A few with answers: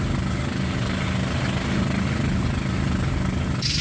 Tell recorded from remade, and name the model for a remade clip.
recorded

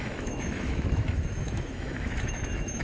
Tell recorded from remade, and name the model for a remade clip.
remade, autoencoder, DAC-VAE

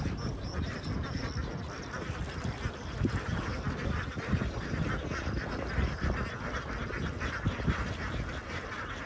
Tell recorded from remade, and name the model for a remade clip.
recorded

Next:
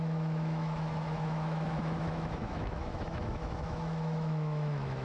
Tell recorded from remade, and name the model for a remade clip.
remade, autoencoder, DAC-VAE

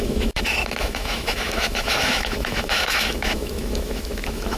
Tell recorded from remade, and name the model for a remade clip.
remade, autoencoder, DAC-VAE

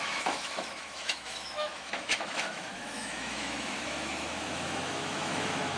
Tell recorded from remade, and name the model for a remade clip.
remade, autoencoder, DAC-VAE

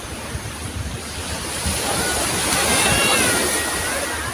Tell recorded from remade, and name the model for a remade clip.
recorded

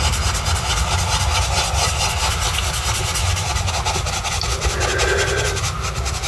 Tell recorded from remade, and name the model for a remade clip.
recorded